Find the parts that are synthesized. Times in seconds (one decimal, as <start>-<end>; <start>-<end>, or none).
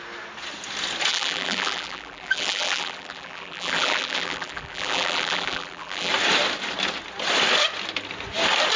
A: 1.1-6.1